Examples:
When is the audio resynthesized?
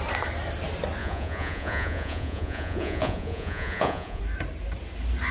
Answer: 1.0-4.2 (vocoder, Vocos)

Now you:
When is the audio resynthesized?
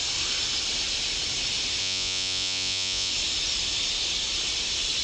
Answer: 1.8-3.1 (vocoder, Vocos)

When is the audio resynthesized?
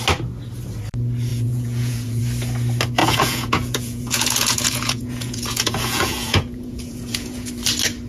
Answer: 1.3-2.2 (vocoder, Vocos); 3.0-7.5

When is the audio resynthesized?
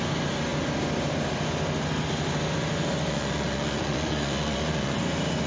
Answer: 3.1-5.0 (vocoder, Vocos)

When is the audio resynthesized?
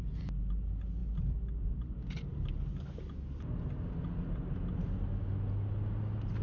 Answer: none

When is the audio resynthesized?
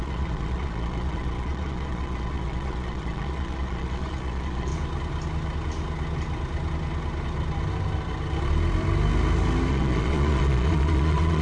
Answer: 0.0-4.7 (vocoder, Vocos); 9.7-11.4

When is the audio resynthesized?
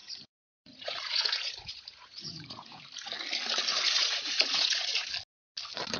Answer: 0.0-2.8 (vocoder, Vocos); 3.7-5.1